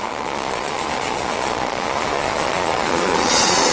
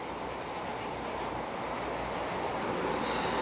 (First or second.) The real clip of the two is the second